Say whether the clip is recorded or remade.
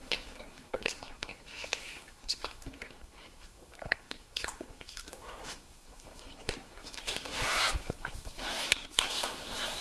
remade